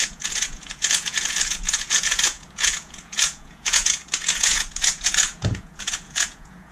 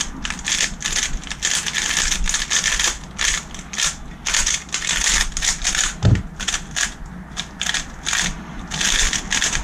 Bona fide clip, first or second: second